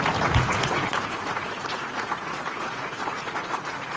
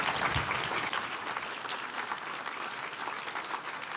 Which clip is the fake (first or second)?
first